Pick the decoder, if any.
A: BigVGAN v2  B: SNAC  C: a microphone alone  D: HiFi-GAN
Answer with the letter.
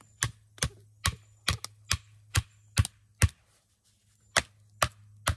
C